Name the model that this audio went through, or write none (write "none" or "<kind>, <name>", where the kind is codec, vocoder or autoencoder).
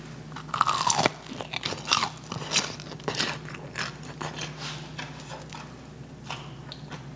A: none